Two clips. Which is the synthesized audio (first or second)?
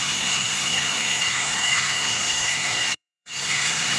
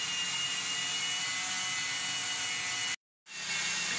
first